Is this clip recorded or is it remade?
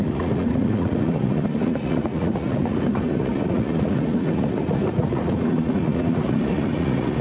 remade